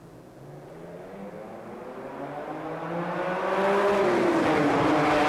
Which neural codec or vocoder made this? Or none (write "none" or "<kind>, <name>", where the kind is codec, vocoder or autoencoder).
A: none